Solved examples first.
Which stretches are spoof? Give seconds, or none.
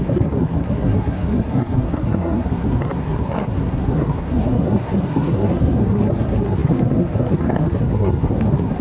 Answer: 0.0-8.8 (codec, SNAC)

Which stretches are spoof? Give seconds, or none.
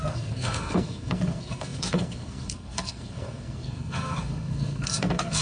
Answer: 0.0-5.4 (codec, SNAC)